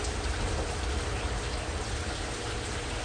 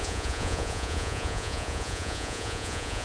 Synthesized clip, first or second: second